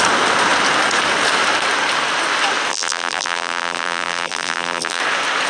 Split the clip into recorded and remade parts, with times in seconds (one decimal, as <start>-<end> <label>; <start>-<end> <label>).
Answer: 0.0-2.7 recorded; 2.7-5.0 remade; 5.0-5.5 recorded